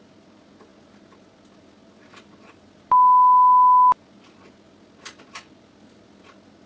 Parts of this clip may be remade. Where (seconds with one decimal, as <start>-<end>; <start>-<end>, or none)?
none